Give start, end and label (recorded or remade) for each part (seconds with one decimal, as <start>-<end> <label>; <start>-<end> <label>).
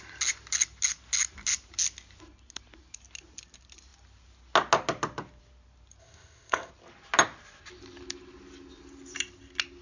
0.0-6.0 recorded; 6.0-6.7 remade; 6.7-9.8 recorded